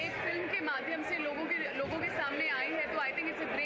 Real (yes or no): yes